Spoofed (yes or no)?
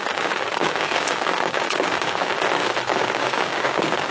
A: yes